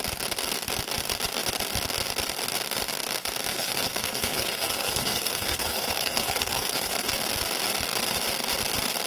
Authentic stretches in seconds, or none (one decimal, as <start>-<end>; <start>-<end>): 0.0-3.5; 7.1-9.1